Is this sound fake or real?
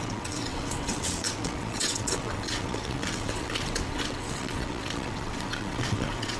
fake